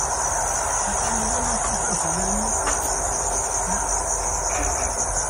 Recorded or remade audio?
recorded